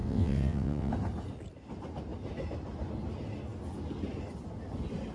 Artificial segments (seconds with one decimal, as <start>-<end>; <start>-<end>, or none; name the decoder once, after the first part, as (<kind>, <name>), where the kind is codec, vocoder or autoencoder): 0.0-0.9 (vocoder, WaveNeXt)